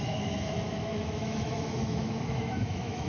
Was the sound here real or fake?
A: fake